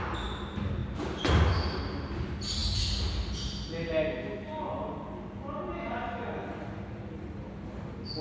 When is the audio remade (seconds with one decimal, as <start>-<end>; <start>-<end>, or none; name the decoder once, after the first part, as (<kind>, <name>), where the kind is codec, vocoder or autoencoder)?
none